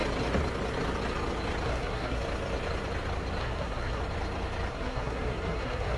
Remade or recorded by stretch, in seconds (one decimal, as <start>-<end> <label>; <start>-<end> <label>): 0.0-1.7 recorded; 1.7-2.2 remade; 2.2-3.4 recorded; 3.4-4.0 remade; 4.0-4.7 recorded; 4.7-6.0 remade